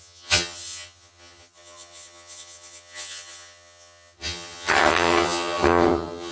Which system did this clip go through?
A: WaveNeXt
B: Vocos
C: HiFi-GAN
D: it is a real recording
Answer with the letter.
C